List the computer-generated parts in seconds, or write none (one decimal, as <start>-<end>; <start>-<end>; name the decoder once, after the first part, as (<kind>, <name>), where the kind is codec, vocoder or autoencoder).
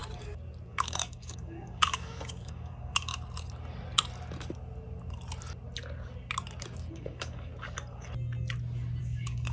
0.7-3.1 (codec, DAC); 6.9-7.5; 9.0-9.5